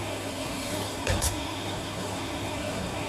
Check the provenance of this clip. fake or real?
fake